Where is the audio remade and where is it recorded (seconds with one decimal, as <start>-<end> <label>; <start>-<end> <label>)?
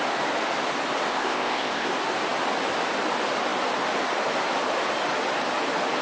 0.0-1.1 recorded; 1.1-1.9 remade; 1.9-6.0 recorded